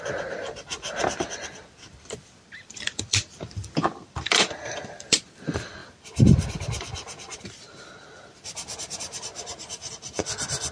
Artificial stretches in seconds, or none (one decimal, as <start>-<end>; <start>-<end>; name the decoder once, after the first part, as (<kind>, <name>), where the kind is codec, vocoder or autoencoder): 0.0-10.7 (vocoder, BigVGAN v2)